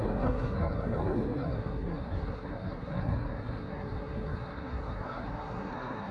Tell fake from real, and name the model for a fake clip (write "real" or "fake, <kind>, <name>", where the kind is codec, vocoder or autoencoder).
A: fake, codec, SNAC